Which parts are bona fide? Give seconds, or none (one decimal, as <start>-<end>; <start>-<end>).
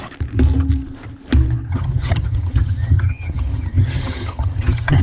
0.0-1.7